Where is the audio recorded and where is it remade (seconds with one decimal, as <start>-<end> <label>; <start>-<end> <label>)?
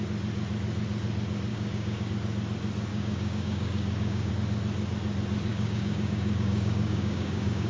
0.0-1.5 recorded; 1.5-2.1 remade; 2.1-2.9 recorded; 2.9-4.3 remade; 4.3-5.5 recorded; 5.5-7.7 remade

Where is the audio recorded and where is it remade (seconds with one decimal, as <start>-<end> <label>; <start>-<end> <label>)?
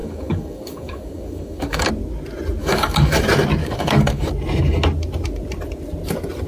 0.0-1.9 remade; 1.9-2.6 recorded; 2.6-3.2 remade; 3.2-3.6 recorded; 3.6-4.3 remade; 4.3-6.5 recorded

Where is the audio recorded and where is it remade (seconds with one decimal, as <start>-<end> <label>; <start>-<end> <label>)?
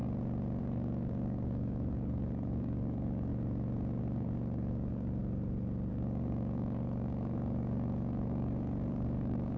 0.0-0.6 recorded; 0.6-3.3 remade; 3.3-4.0 recorded; 4.0-5.2 remade; 5.2-5.9 recorded; 5.9-9.6 remade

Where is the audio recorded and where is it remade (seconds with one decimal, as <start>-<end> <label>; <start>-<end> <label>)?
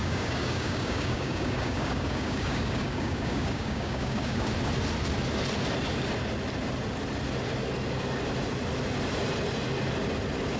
0.0-4.5 remade; 4.5-10.6 recorded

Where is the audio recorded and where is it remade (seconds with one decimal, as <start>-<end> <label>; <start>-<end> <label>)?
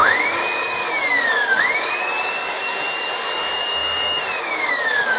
0.0-5.2 remade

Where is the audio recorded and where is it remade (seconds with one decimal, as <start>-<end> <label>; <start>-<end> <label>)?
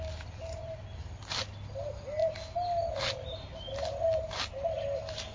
0.0-5.3 recorded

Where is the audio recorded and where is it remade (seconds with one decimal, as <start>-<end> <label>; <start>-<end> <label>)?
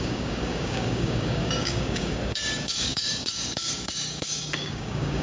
0.0-5.2 remade